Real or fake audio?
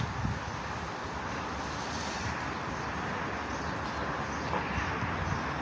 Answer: real